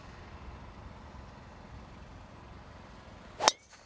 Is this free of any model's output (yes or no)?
yes